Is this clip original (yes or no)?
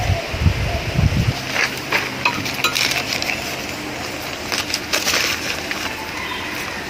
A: yes